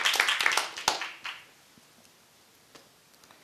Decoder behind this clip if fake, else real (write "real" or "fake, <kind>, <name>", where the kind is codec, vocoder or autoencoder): real